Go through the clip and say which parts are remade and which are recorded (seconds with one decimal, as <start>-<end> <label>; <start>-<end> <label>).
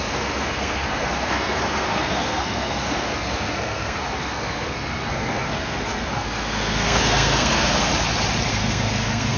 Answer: 0.0-7.9 remade; 7.9-8.5 recorded; 8.5-9.4 remade